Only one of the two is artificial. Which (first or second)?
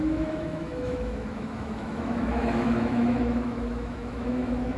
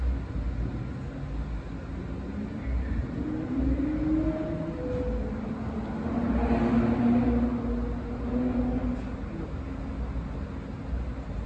first